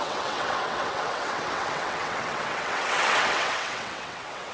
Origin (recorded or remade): remade